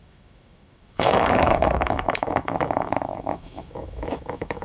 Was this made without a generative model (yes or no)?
no